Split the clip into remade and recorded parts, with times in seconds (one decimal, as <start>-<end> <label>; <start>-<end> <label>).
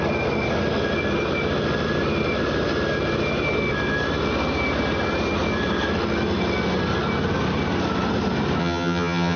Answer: 0.0-8.6 recorded; 8.6-9.4 remade